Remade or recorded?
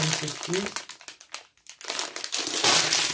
recorded